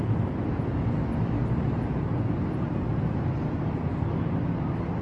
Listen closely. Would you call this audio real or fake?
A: real